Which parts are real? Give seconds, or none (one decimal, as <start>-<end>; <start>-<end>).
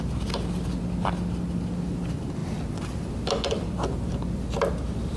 0.0-5.2